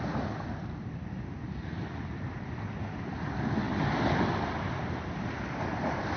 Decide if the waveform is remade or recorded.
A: recorded